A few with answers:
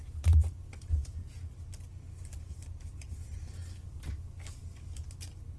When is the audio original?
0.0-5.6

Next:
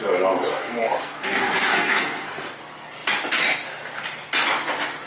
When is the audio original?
0.0-0.5; 2.6-5.1

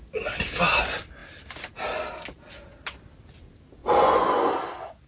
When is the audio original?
0.0-3.8; 4.5-5.1

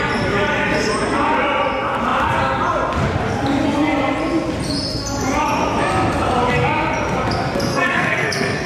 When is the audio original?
0.0-7.7

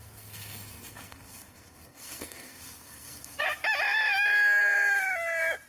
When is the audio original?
3.4-5.7

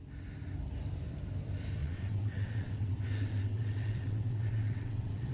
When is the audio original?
0.0-1.8

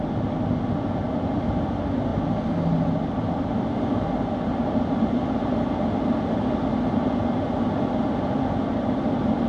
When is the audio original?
0.0-9.5

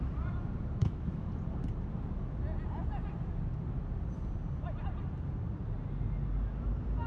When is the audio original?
0.0-0.8; 1.3-7.1